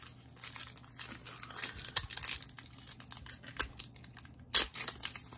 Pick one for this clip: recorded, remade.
recorded